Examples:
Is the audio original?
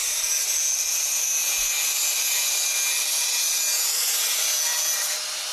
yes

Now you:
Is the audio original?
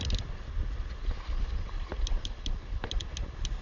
yes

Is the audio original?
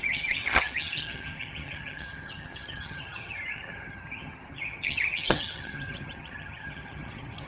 no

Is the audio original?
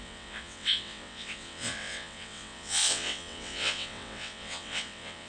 no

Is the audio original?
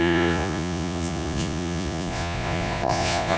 no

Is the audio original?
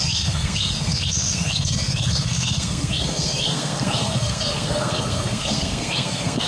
no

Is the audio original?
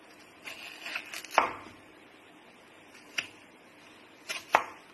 yes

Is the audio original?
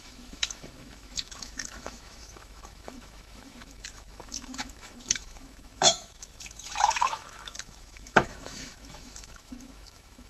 no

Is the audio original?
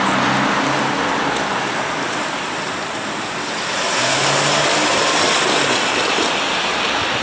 yes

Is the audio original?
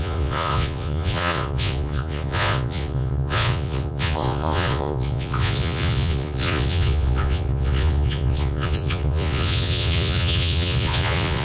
no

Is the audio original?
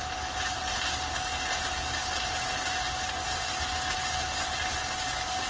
yes